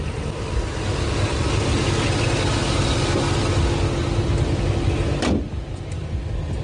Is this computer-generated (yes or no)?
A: no